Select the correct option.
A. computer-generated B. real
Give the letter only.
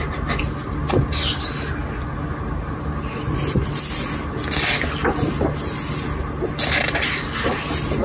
B